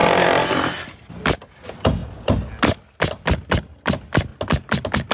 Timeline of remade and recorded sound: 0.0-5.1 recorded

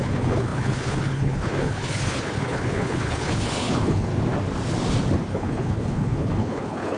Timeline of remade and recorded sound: 0.0-4.1 remade; 4.1-5.3 recorded; 5.3-7.0 remade

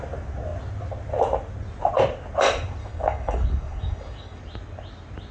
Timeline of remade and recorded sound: 0.0-2.8 recorded; 2.8-4.4 remade; 4.4-5.3 recorded

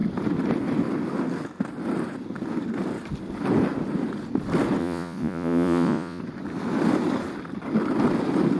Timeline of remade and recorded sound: 0.0-4.8 recorded; 4.8-6.2 remade; 6.2-8.6 recorded

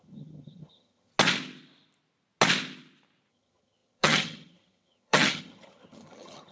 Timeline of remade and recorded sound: 0.0-1.1 remade; 1.1-3.3 recorded; 3.3-6.5 remade

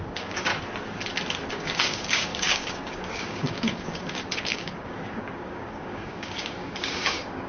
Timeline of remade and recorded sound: 0.0-0.5 remade; 0.5-1.5 recorded; 1.5-7.5 remade

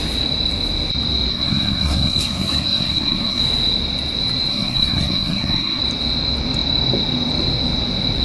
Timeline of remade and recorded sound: 0.0-1.3 recorded; 1.3-3.4 remade; 3.4-4.5 recorded; 4.5-5.8 remade; 5.8-8.2 recorded